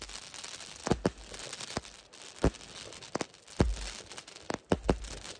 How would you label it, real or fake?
real